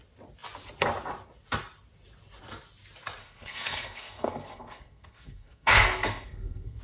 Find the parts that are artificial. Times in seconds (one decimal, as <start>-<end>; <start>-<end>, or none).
3.2-6.8